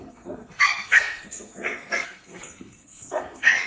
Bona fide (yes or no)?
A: no